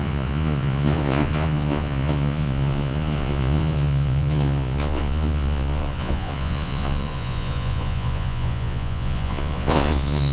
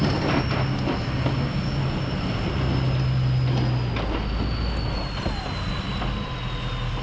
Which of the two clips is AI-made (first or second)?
first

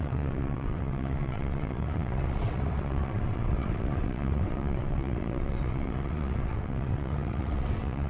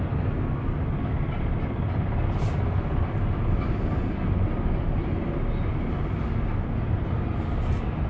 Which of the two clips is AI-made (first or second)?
first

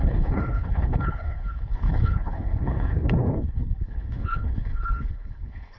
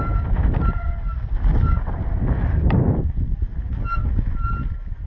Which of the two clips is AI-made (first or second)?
first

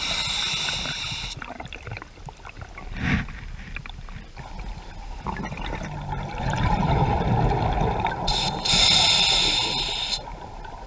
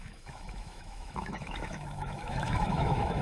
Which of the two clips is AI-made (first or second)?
second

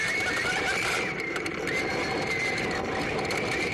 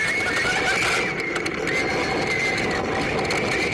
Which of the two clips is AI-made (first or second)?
first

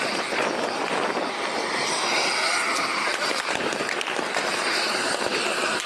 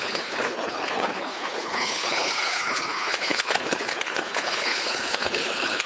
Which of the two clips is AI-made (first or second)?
second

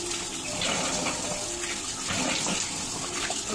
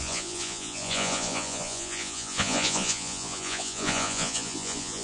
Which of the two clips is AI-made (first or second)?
second